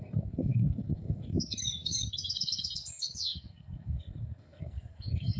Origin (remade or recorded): remade